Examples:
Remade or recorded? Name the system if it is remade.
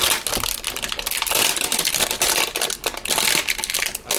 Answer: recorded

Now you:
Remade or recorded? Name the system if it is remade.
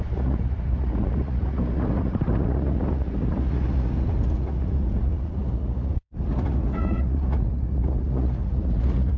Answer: remade, vocoder, Vocos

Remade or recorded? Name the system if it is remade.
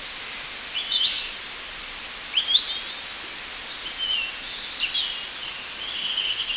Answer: recorded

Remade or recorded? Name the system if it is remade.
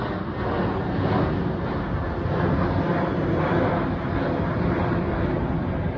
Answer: recorded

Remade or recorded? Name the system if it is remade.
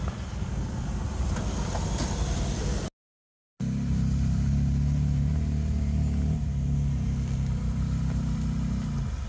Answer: recorded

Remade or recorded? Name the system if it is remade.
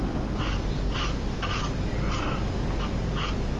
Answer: recorded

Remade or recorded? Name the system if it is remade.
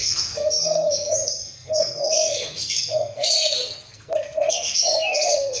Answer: remade, codec, SNAC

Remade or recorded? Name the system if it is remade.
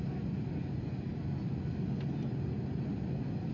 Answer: recorded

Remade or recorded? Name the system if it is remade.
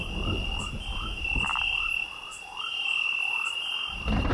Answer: recorded